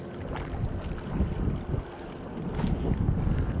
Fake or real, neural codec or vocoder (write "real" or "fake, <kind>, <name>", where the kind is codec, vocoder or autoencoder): real